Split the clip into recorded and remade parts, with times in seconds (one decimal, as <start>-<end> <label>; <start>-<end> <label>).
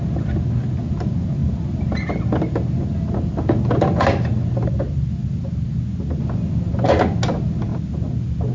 0.0-8.5 recorded